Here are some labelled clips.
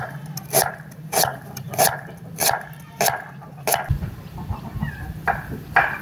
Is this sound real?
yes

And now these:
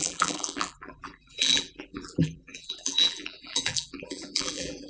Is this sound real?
no